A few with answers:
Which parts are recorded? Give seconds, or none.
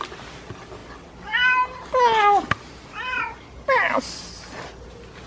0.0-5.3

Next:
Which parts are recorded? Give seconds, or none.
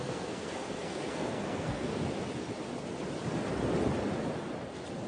1.9-5.1